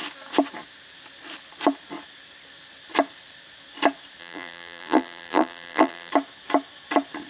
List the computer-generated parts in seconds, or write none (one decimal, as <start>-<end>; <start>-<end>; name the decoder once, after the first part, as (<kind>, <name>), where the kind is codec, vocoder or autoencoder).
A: 4.2-6.1 (vocoder, BigVGAN v2)